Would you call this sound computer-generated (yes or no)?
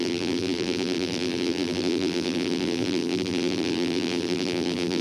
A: yes